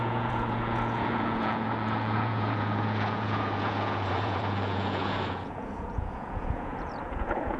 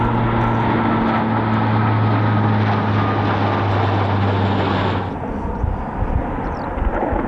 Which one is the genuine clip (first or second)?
second